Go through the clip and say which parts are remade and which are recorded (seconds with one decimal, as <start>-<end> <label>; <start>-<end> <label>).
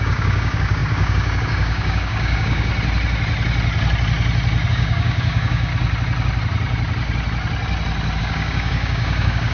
0.0-2.7 remade; 2.7-4.7 recorded; 4.7-5.7 remade; 5.7-8.2 recorded; 8.2-9.5 remade